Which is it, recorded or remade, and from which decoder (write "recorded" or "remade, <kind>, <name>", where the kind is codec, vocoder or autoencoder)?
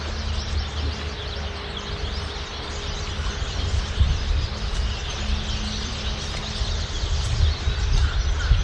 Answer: recorded